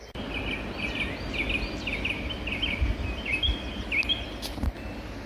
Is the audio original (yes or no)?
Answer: yes